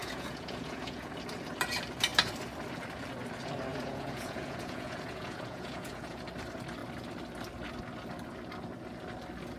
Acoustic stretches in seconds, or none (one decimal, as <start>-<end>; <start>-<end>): 1.1-3.7; 6.2-9.6